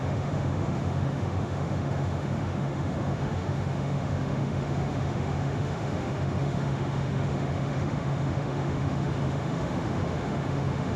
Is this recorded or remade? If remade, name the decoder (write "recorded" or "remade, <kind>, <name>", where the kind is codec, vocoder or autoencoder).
remade, autoencoder, DAC-VAE